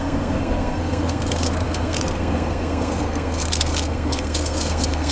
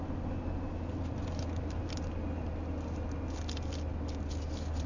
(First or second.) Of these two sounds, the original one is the second